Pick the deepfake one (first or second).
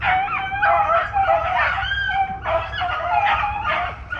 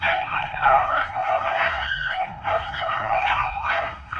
second